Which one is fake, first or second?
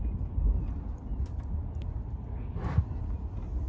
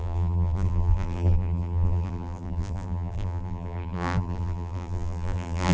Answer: second